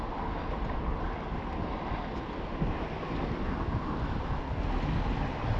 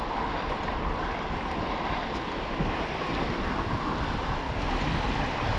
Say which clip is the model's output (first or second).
second